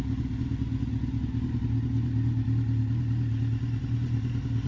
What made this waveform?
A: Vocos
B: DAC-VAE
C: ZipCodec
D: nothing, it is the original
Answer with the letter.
D